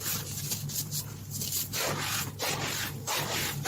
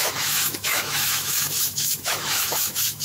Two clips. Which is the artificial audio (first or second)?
second